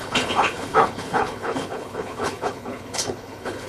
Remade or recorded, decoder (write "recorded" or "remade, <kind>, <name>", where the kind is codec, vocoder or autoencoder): remade, codec, HILCodec